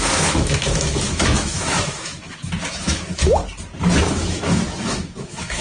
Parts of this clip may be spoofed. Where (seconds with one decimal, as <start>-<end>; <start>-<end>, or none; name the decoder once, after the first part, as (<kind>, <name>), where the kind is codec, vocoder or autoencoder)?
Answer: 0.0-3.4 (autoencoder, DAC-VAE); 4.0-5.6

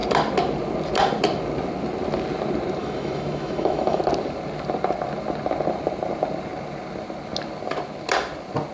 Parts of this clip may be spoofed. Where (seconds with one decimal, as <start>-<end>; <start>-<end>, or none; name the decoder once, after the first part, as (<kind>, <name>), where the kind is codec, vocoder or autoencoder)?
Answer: 2.8-4.0 (autoencoder, DAC-VAE)

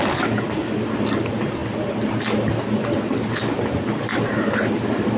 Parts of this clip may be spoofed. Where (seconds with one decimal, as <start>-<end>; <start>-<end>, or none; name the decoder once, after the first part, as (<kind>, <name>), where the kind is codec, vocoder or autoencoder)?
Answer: none

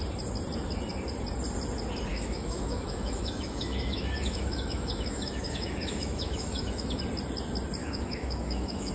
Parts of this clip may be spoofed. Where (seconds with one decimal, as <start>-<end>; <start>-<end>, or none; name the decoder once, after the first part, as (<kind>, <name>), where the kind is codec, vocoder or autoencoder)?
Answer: 2.1-7.0 (autoencoder, DAC-VAE); 7.8-8.9

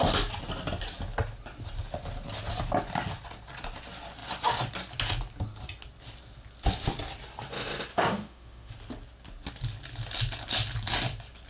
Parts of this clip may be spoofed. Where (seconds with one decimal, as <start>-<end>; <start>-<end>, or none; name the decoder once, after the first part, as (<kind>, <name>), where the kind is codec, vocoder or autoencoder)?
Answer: 7.9-8.7 (autoencoder, DAC-VAE)

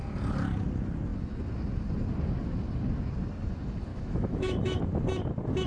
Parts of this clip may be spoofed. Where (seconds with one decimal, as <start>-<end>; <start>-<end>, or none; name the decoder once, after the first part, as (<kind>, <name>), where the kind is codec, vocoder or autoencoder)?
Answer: 3.9-4.8 (autoencoder, DAC-VAE)